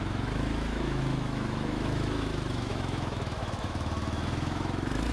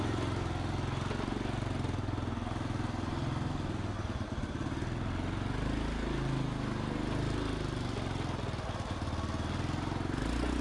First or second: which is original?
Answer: second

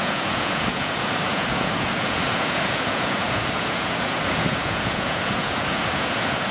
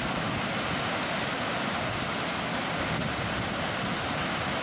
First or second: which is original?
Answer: second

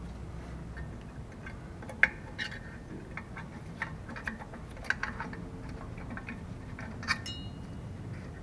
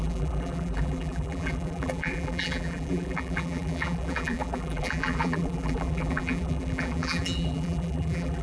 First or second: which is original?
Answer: first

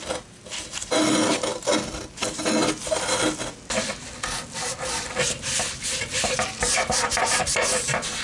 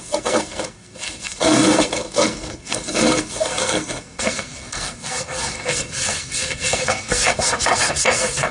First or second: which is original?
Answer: first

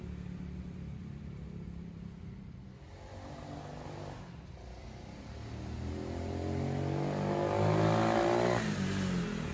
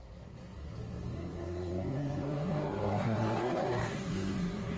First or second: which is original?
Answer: first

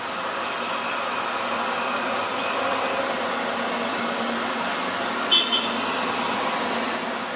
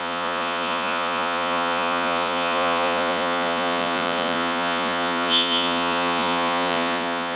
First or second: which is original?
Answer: first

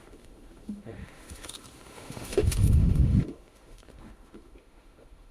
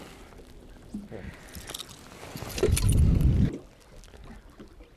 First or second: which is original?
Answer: second